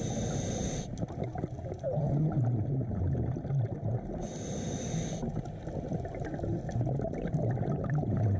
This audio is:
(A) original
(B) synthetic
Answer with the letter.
A